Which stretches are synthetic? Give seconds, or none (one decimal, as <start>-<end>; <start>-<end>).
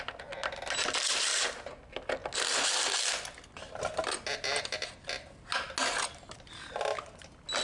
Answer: none